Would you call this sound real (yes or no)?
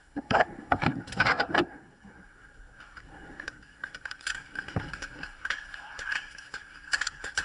no